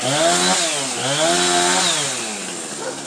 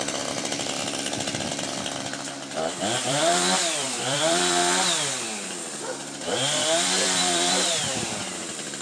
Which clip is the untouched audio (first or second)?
first